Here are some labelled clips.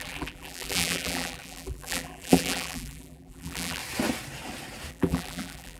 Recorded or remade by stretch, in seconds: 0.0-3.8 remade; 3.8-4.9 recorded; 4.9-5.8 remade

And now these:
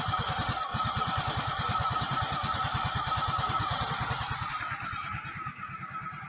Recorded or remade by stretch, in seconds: 0.0-6.3 remade